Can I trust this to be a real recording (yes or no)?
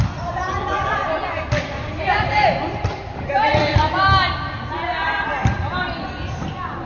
yes